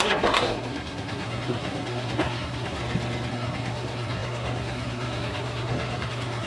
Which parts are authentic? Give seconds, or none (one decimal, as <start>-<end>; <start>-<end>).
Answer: 2.8-3.3